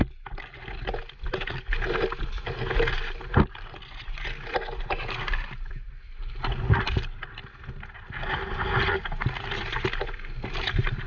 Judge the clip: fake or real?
real